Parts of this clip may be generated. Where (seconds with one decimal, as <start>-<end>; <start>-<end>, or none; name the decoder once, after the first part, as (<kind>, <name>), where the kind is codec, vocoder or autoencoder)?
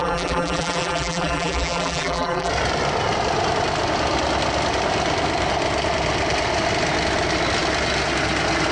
0.0-2.5 (vocoder, BigVGAN v2)